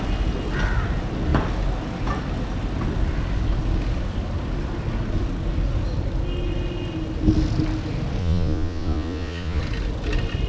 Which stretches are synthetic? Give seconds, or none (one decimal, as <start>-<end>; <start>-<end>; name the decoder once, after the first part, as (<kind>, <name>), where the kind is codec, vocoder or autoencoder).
8.2-9.6 (vocoder, Vocos)